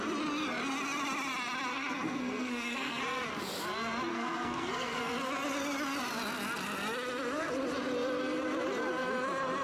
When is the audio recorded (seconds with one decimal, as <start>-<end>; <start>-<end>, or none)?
0.0-1.7; 3.0-4.1; 5.0-9.6